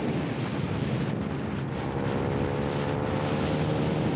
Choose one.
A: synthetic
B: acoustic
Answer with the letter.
B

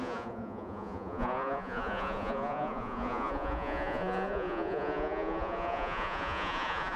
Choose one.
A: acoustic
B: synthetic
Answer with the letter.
B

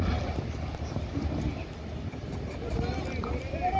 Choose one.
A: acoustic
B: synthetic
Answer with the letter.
A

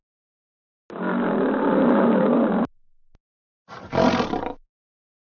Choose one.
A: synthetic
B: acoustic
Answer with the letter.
B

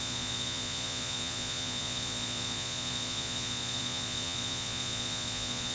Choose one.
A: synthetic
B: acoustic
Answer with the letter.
A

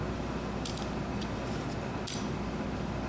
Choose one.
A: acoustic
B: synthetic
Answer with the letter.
A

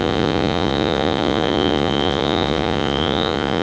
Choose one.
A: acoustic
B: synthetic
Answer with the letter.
B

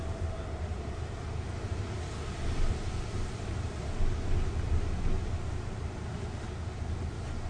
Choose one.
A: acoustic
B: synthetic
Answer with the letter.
A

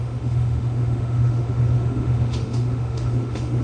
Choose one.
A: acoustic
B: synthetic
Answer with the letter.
B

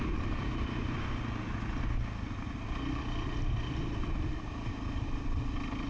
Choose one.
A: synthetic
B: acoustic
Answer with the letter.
B